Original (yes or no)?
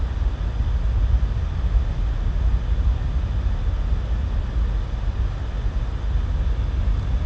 yes